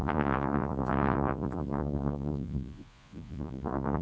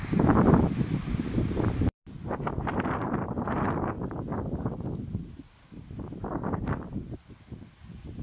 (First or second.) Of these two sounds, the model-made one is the first